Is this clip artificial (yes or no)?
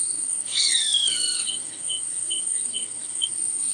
yes